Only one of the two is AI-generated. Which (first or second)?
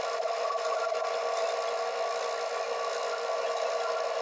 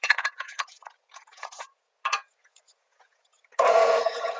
second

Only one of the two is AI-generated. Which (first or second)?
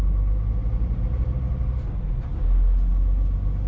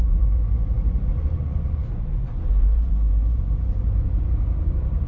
second